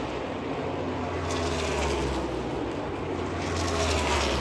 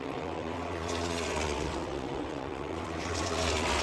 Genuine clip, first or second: first